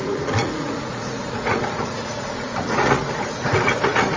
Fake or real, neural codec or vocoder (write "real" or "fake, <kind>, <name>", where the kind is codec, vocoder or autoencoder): fake, vocoder, Vocos